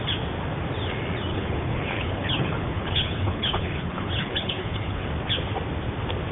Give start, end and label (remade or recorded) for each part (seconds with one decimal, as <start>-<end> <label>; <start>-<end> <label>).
0.0-1.3 recorded; 1.3-5.1 remade; 5.1-6.3 recorded